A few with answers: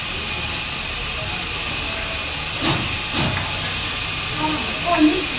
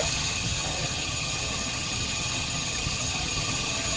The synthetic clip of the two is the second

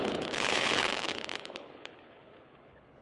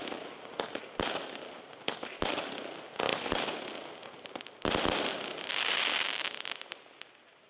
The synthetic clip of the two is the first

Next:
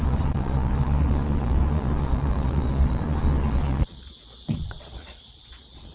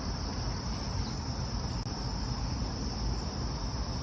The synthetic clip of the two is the first